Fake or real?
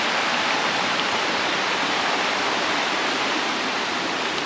fake